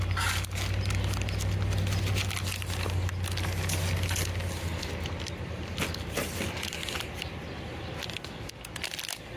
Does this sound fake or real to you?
real